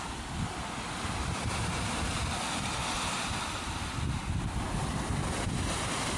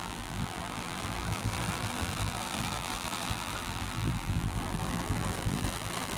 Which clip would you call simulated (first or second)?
second